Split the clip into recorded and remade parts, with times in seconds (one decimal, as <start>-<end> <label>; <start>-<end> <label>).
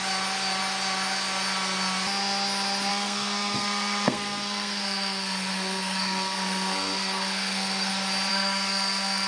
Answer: 0.0-2.9 recorded; 2.9-7.9 remade; 7.9-8.3 recorded; 8.3-9.3 remade